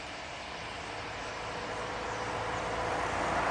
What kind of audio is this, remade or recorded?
recorded